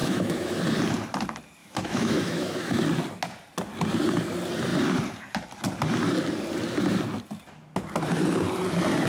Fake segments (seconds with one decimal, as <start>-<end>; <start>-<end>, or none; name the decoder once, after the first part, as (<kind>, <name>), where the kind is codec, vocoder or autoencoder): 0.0-0.6 (autoencoder, DAC-VAE); 1.6-2.8